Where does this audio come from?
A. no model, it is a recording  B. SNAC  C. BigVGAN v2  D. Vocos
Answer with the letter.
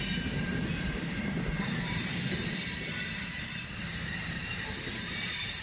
C